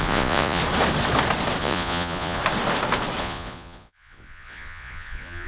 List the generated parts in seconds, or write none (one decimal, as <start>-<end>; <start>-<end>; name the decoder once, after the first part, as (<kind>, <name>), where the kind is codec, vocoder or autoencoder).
0.0-0.6 (vocoder, Vocos); 1.6-2.4; 3.2-5.5